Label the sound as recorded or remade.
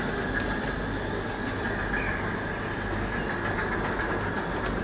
recorded